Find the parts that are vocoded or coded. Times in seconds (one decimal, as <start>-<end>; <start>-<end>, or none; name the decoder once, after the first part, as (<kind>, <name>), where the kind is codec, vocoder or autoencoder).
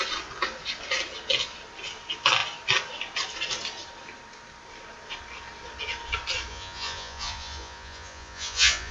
6.5-8.9 (vocoder, Vocos)